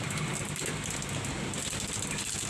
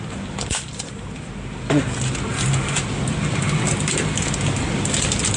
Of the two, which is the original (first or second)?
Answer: first